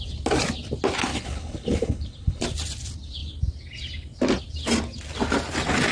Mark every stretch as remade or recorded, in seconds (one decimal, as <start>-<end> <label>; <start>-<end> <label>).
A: 0.0-1.1 recorded; 1.1-2.4 remade; 2.4-5.9 recorded